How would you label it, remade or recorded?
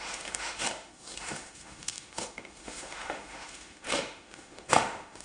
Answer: remade